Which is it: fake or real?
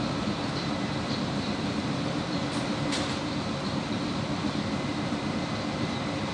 fake